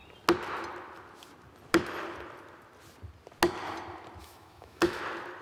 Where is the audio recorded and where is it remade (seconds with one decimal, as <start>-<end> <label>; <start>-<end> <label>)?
0.0-4.2 recorded; 4.2-5.0 remade; 5.0-5.4 recorded

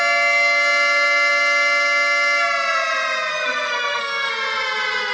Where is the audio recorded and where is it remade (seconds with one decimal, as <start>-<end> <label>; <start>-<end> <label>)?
0.0-3.3 recorded; 3.3-4.3 remade; 4.3-5.1 recorded

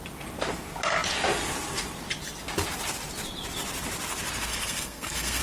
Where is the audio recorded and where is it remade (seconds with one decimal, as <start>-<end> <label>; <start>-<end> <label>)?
0.0-4.5 recorded; 4.5-5.4 remade

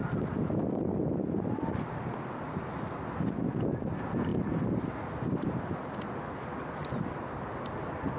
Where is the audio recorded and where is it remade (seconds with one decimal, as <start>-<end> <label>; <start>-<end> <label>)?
0.0-8.2 recorded